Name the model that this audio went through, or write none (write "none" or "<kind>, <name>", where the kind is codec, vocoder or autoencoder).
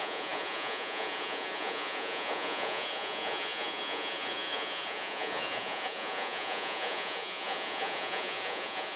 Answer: vocoder, Vocos